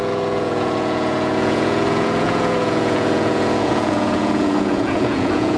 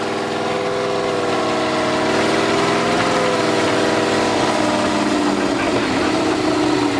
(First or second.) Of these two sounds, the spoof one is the first